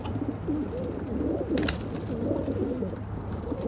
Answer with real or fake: real